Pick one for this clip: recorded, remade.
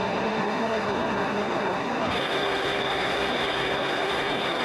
remade